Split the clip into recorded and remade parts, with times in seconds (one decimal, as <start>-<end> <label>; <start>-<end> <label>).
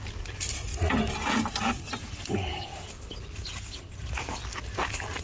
0.0-0.7 remade; 0.7-2.3 recorded; 2.3-2.7 remade; 2.7-3.8 recorded; 3.8-4.4 remade; 4.4-5.2 recorded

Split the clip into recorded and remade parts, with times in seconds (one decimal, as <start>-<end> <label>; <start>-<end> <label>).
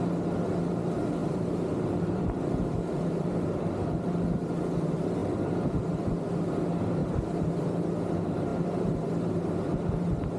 0.0-1.2 recorded; 1.2-4.5 remade; 4.5-5.2 recorded; 5.2-5.8 remade; 5.8-7.0 recorded; 7.0-7.5 remade; 7.5-10.4 recorded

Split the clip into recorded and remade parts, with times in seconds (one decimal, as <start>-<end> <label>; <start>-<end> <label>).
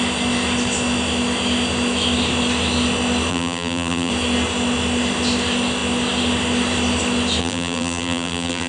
0.0-3.3 recorded; 3.3-4.1 remade; 4.1-7.4 recorded; 7.4-8.7 remade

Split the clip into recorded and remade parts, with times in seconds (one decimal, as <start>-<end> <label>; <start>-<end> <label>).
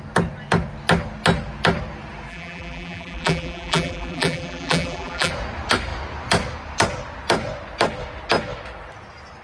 0.0-2.3 recorded; 2.3-5.3 remade; 5.3-9.4 recorded